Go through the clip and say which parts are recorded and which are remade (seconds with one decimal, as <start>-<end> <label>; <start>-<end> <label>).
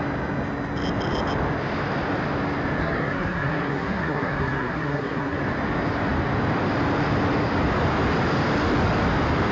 0.0-2.8 recorded; 2.8-5.4 remade; 5.4-9.5 recorded